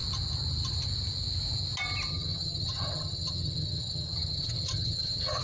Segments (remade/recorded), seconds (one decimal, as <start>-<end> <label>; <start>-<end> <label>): 0.0-2.1 recorded; 2.1-5.4 remade